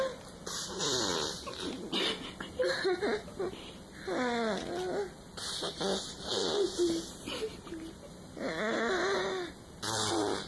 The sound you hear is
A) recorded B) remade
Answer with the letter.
A